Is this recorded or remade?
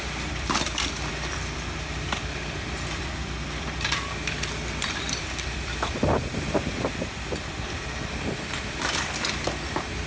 remade